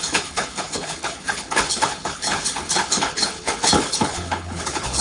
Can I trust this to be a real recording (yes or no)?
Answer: no